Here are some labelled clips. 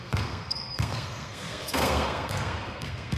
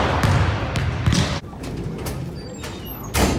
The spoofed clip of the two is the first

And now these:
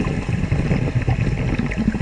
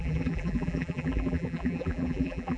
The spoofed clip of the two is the second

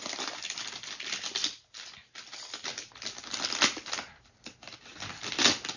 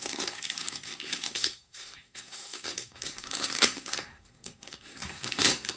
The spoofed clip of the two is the second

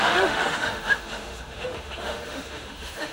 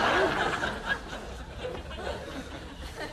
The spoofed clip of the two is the first